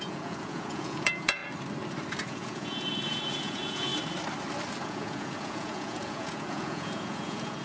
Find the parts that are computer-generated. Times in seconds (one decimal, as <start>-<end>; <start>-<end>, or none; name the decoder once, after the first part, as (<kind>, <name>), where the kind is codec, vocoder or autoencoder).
0.0-1.4 (vocoder, Vocos); 2.2-3.9; 4.8-7.6